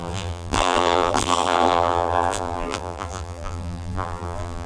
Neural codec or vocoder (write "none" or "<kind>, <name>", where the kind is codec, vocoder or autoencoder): vocoder, BigVGAN v2